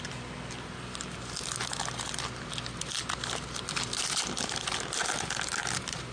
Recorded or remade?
recorded